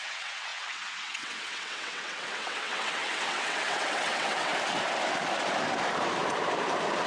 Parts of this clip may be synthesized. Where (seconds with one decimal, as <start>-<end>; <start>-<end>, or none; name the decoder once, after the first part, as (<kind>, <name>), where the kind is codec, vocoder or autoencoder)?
0.0-4.5 (vocoder, WaveNeXt)